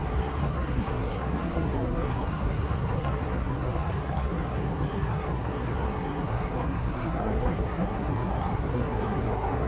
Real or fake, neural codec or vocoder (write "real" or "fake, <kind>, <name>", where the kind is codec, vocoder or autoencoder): fake, codec, SNAC